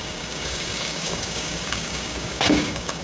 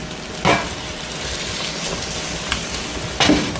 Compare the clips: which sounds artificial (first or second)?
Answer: first